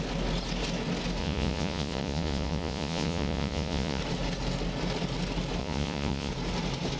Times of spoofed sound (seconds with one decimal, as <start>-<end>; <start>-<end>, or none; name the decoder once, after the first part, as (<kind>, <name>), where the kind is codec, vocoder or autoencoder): 1.2-4.0 (vocoder, Vocos); 5.6-6.3